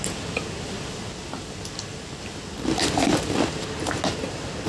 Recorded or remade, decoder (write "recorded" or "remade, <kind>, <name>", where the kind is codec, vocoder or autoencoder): recorded